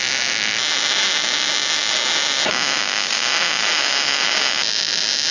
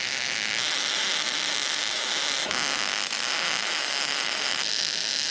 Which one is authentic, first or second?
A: first